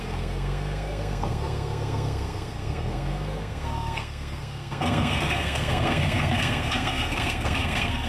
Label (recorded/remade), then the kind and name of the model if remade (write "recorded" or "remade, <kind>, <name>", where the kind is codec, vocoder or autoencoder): remade, codec, SNAC